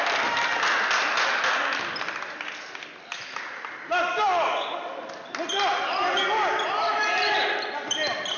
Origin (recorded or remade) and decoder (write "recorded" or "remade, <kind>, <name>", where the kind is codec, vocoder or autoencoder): recorded